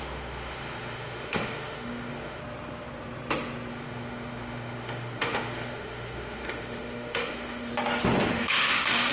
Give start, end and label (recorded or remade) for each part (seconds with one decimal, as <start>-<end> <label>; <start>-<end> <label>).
0.0-2.4 remade; 2.4-3.7 recorded; 3.7-7.7 remade; 7.7-8.3 recorded; 8.3-9.1 remade